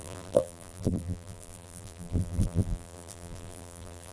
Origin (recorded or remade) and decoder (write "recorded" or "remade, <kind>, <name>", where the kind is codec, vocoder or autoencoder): remade, vocoder, BigVGAN v2